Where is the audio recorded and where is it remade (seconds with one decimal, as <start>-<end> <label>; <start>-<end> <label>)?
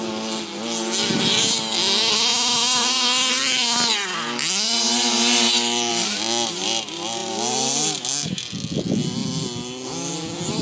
0.0-10.6 recorded